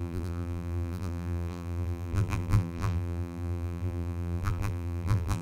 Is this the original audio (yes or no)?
no